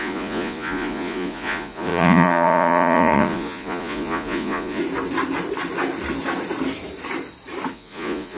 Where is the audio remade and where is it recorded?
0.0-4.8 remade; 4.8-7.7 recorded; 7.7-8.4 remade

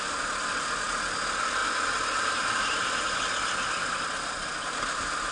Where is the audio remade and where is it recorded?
0.0-5.3 recorded

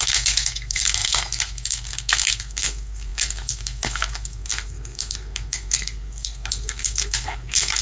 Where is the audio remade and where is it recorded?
0.0-7.8 remade